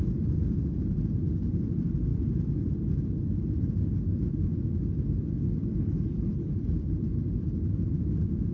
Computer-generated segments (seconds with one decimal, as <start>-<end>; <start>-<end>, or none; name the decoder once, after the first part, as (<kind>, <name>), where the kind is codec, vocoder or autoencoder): 5.7-6.5 (codec, HILCodec)